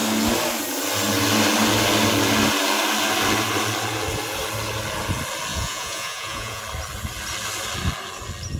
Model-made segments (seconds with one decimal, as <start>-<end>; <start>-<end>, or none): 5.5-6.6